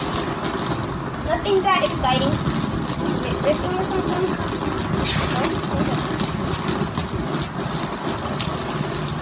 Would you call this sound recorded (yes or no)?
yes